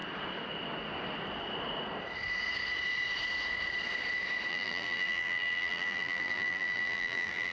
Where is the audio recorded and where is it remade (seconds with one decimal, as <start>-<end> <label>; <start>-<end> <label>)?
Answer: 0.0-4.5 recorded; 4.5-7.5 remade